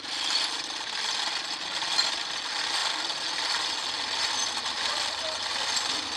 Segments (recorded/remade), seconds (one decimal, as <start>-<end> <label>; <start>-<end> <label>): 0.0-6.2 recorded